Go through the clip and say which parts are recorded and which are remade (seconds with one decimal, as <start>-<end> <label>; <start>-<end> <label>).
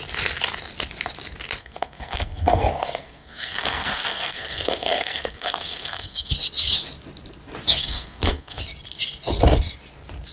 0.0-1.6 recorded; 1.6-6.3 remade; 6.3-7.8 recorded; 7.8-8.6 remade; 8.6-10.3 recorded